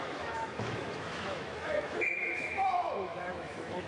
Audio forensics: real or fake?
fake